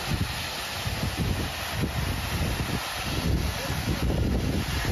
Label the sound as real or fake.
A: real